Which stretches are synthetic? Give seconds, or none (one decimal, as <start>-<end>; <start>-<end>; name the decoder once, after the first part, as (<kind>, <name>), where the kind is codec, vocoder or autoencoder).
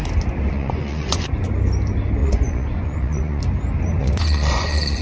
0.5-1.3 (vocoder, Vocos); 2.2-3.4; 4.0-5.0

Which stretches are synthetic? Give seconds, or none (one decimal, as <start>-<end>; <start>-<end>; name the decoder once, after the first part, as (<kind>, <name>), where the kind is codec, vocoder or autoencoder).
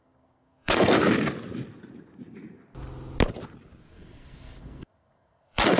0.0-1.0 (codec, SNAC); 3.8-5.8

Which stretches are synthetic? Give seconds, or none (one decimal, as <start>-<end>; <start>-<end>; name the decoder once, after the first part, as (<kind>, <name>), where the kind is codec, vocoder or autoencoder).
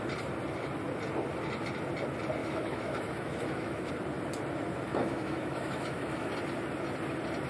2.4-3.9 (autoencoder, DAC-VAE); 4.9-6.3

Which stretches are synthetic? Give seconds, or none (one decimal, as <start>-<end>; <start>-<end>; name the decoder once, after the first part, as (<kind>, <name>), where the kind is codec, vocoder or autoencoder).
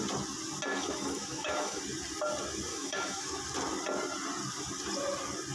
0.7-1.8 (autoencoder, DAC-VAE); 2.7-3.4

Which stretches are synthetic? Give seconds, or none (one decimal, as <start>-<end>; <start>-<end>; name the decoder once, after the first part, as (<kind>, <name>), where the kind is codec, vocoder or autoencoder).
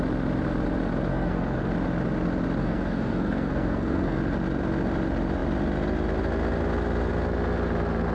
1.1-1.7 (codec, SNAC); 2.6-4.2